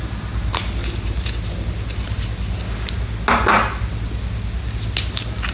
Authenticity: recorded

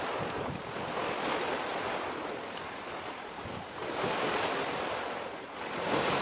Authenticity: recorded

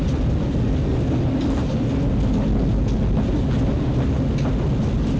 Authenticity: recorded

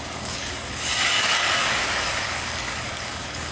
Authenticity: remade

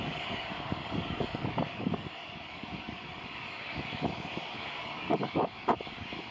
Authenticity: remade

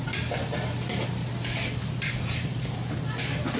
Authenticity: recorded